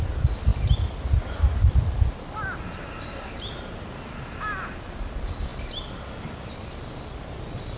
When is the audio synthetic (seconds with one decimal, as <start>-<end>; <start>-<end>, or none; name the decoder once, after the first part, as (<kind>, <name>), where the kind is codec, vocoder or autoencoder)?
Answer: none

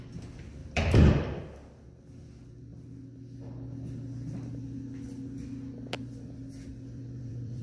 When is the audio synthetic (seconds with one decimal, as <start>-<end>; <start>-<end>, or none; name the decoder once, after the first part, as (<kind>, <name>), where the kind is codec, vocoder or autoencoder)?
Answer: 0.6-1.4 (vocoder, BigVGAN v2); 6.7-7.6

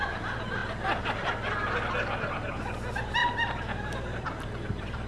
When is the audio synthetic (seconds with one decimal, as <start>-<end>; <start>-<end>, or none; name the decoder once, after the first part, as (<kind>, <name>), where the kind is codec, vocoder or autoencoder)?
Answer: 3.2-5.1 (vocoder, BigVGAN v2)

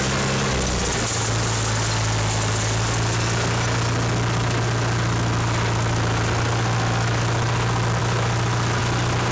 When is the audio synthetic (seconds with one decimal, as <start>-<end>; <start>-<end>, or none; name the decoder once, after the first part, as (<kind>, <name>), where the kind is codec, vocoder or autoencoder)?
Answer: none

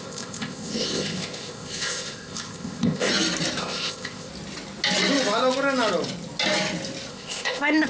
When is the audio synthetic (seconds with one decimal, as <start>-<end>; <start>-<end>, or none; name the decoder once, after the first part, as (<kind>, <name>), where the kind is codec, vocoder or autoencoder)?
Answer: 0.0-3.1 (codec, ZipCodec); 3.6-4.3; 7.1-7.9